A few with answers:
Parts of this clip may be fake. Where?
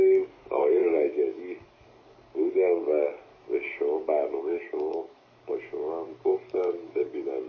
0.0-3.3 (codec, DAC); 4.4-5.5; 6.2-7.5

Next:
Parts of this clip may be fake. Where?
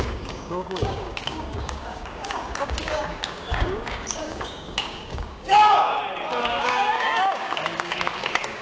0.0-6.0 (codec, DAC); 6.5-8.6